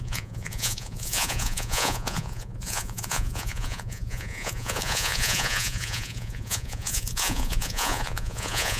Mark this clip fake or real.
fake